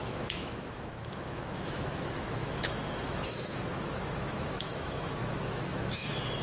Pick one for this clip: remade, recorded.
remade